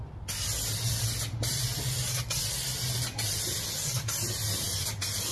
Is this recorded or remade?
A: recorded